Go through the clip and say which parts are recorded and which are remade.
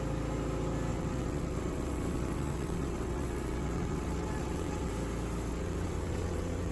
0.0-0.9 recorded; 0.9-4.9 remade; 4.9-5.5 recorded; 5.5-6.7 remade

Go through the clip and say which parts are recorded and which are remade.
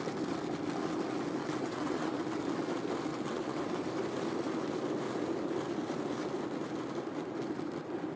0.0-1.4 recorded; 1.4-2.2 remade; 2.2-3.1 recorded; 3.1-3.8 remade; 3.8-8.2 recorded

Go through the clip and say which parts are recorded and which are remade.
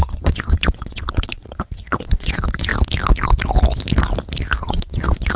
0.0-2.7 remade; 2.7-4.6 recorded; 4.6-5.4 remade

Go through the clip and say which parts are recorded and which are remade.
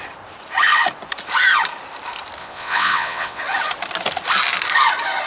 0.0-2.4 recorded; 2.4-3.4 remade; 3.4-5.3 recorded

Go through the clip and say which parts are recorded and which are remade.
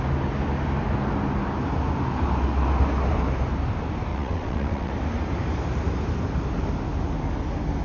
0.0-4.1 recorded; 4.1-4.9 remade; 4.9-7.8 recorded